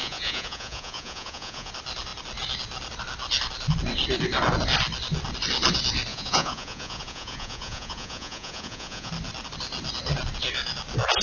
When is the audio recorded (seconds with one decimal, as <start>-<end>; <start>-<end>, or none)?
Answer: 1.7-6.1; 9.1-11.2